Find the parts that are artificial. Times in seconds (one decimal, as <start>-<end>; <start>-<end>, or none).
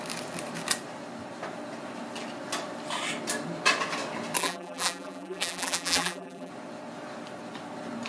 4.4-6.5